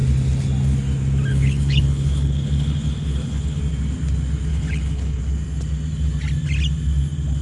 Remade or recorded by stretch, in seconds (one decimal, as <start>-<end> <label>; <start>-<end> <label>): 0.0-1.3 recorded; 1.3-3.6 remade; 3.6-4.5 recorded; 4.5-5.2 remade; 5.2-7.4 recorded